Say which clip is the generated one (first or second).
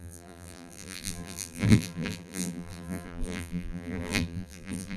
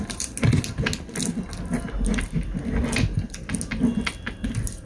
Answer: first